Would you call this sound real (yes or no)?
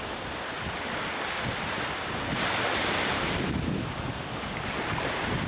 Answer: yes